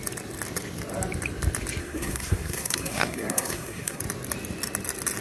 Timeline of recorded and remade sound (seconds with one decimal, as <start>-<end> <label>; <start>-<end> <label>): 0.0-1.8 recorded; 1.8-4.0 remade; 4.0-5.2 recorded